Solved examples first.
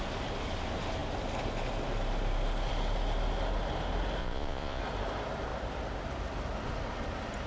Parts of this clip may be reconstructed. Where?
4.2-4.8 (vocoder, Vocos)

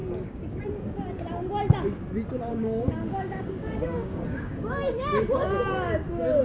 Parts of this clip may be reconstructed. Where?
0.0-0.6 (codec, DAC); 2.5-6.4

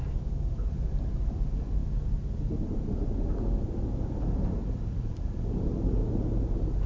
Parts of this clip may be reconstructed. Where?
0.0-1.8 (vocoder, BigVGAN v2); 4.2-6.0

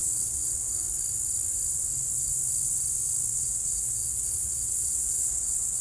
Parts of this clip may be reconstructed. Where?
0.0-0.7 (vocoder, WaveNeXt); 3.3-5.8